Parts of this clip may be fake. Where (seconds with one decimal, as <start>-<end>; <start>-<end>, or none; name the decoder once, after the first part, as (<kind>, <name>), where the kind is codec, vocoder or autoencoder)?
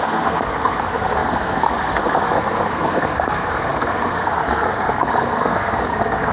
0.0-6.3 (codec, SNAC)